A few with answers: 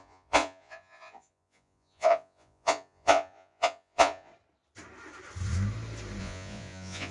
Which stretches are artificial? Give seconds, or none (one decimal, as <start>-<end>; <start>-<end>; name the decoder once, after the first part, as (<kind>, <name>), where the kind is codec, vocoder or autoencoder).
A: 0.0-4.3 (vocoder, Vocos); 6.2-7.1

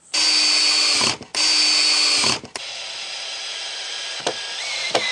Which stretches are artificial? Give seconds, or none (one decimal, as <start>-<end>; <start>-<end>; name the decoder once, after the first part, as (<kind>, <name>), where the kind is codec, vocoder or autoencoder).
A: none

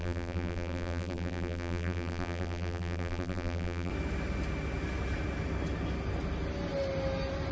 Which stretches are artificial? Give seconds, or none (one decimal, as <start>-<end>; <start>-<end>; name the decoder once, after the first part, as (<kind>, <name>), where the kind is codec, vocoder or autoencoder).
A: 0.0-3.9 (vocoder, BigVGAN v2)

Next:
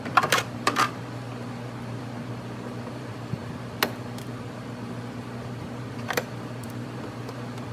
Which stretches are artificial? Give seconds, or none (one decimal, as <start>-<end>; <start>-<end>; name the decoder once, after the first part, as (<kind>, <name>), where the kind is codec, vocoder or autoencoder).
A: 0.0-1.3 (vocoder, BigVGAN v2); 2.9-3.4; 5.9-7.7

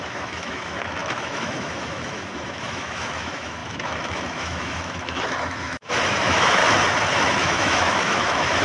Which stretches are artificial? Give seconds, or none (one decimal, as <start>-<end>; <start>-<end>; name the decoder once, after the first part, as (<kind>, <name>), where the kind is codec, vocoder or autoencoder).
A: 0.0-6.6 (autoencoder, DAC-VAE); 7.1-8.6